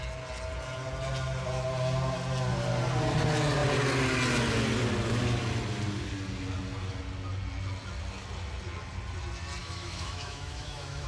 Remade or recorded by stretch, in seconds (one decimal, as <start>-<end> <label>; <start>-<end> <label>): 0.0-9.6 recorded; 9.6-11.1 remade